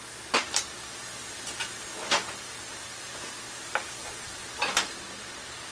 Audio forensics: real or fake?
real